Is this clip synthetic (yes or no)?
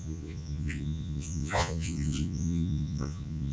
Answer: yes